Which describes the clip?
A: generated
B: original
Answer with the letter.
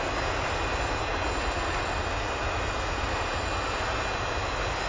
B